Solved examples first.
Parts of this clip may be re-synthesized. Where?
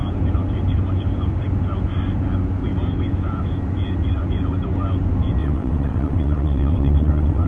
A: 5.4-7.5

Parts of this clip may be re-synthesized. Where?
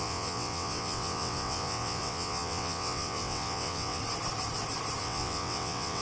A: 0.0-4.0; 5.0-6.0